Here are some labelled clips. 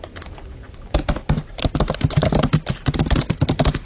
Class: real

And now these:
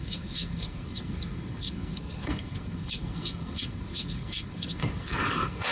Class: fake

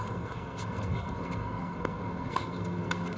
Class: fake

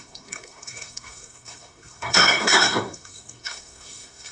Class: fake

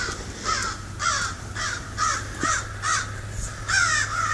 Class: real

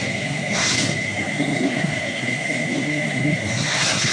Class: fake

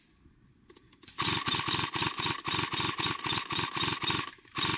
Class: real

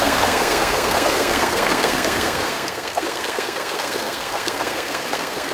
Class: fake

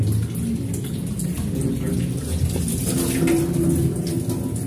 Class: real